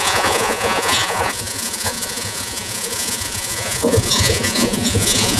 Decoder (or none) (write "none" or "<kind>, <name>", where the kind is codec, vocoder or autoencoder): vocoder, Vocos